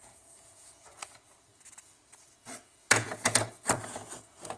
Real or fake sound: fake